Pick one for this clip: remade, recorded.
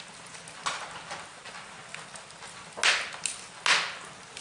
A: recorded